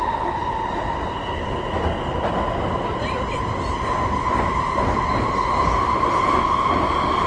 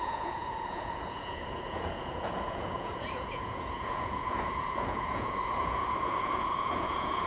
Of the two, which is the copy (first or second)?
second